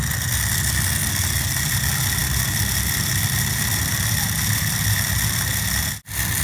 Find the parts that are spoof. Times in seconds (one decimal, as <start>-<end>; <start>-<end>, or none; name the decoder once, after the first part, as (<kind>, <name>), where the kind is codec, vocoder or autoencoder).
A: 1.0-1.5 (vocoder, BigVGAN v2); 2.2-5.1